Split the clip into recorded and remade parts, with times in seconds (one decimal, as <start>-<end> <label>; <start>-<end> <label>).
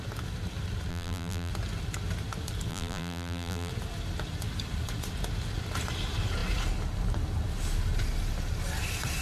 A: 0.0-0.9 recorded; 0.9-1.5 remade; 1.5-2.7 recorded; 2.7-3.7 remade; 3.7-9.2 recorded